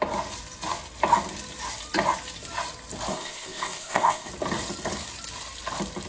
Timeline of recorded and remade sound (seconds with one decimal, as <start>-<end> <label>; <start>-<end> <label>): 0.0-3.1 recorded; 3.1-4.3 remade; 4.3-6.1 recorded